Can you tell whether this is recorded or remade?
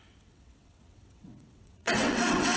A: remade